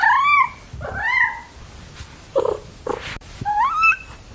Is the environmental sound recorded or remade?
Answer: recorded